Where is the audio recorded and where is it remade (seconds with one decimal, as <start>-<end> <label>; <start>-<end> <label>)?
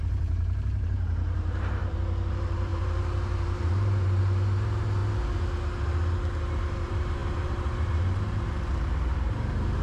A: 0.0-1.8 remade; 1.8-2.3 recorded; 2.3-5.0 remade; 5.0-6.6 recorded; 6.6-9.8 remade